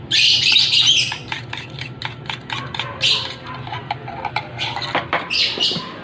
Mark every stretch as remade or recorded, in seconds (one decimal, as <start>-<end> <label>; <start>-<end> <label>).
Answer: 0.0-2.0 remade; 2.0-3.8 recorded; 3.8-6.0 remade